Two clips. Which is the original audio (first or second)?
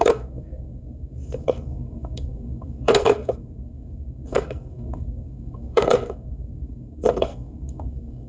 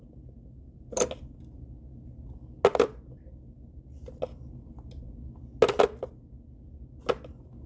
second